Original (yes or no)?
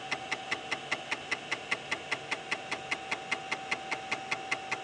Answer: yes